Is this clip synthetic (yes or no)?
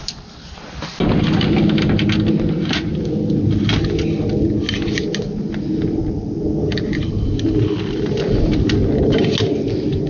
no